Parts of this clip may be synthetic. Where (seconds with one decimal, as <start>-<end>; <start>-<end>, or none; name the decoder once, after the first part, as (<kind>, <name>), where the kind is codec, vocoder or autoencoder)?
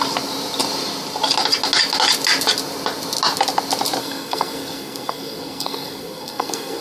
4.0-6.8 (codec, SNAC)